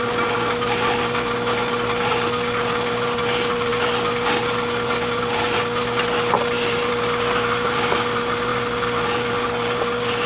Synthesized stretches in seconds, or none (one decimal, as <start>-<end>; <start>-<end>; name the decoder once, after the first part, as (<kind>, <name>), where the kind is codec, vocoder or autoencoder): none